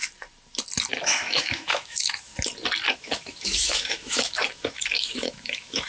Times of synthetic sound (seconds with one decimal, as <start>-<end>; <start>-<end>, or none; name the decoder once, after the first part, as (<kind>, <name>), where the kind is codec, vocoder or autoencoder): 0.9-2.3 (autoencoder, DAC-VAE); 2.9-5.9